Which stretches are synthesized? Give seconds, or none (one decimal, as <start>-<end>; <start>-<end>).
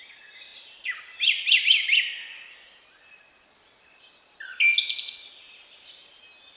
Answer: none